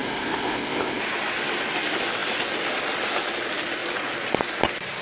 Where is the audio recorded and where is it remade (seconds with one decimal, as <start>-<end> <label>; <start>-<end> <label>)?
0.0-1.0 remade; 1.0-5.0 recorded